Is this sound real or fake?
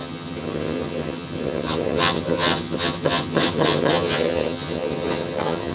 fake